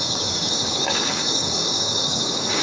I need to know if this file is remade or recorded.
remade